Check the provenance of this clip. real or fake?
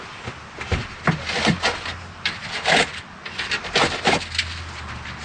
real